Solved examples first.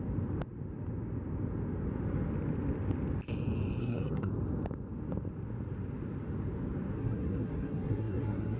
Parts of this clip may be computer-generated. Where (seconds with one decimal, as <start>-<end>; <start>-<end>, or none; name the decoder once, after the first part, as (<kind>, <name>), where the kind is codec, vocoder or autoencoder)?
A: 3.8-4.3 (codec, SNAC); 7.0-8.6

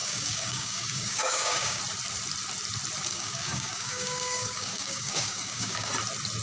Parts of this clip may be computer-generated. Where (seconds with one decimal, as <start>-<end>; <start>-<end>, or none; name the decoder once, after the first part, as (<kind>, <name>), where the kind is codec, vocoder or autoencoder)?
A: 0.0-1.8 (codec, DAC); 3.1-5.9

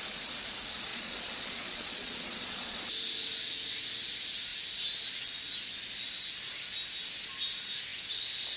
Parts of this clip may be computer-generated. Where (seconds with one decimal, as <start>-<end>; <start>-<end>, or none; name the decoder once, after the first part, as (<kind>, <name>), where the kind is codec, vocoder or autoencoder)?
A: 0.9-2.8 (vocoder, Vocos)

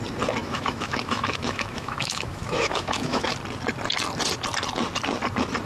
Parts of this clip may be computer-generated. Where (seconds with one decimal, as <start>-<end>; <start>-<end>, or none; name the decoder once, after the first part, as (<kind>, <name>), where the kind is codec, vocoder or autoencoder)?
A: 0.4-3.3 (autoencoder, DAC-VAE)

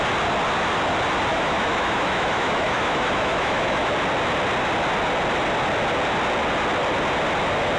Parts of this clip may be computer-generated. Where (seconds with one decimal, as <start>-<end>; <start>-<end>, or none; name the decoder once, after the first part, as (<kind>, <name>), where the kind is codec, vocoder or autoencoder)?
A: 1.3-3.9 (autoencoder, DAC-VAE)

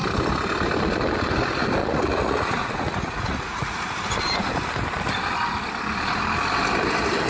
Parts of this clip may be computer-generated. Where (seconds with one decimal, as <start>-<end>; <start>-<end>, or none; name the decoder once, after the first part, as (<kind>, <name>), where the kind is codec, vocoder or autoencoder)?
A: 1.8-4.5 (vocoder, Vocos)

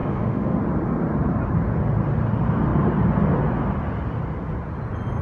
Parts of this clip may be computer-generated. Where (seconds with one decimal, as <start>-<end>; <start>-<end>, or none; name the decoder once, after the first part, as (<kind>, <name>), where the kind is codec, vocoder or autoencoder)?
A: 0.0-0.6 (autoencoder, DAC-VAE)